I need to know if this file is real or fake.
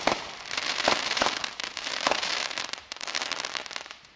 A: fake